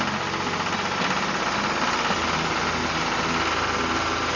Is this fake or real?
real